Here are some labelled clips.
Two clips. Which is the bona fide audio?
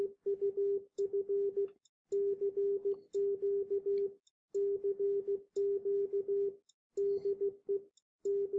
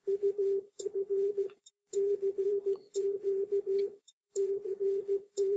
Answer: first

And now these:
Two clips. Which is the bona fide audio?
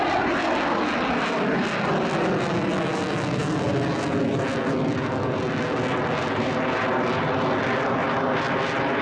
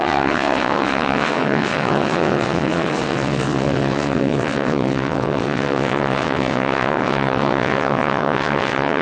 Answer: first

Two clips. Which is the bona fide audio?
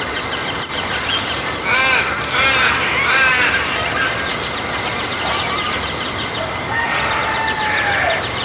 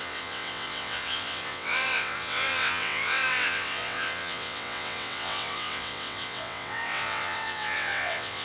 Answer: first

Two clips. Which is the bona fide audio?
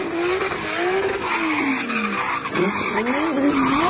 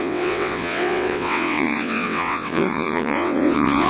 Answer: first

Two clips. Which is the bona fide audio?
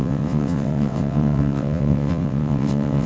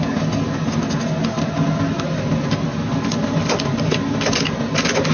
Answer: second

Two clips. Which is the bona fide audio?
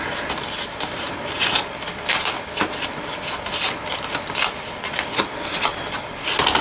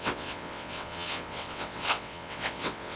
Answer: first